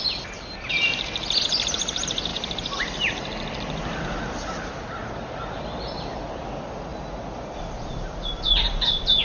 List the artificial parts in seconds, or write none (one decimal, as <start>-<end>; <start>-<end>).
2.3-4.0